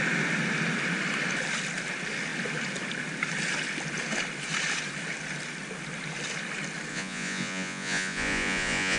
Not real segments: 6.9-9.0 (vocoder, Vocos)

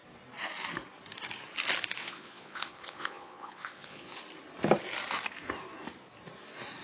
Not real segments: 2.0-4.2 (vocoder, Vocos)

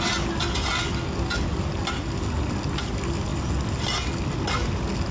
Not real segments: none